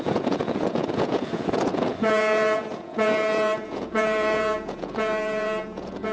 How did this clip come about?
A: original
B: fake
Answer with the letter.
B